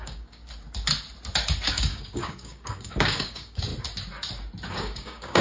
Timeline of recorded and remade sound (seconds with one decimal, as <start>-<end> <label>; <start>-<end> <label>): 0.0-0.4 remade; 0.4-1.7 recorded; 1.7-3.7 remade; 3.7-4.7 recorded; 4.7-5.4 remade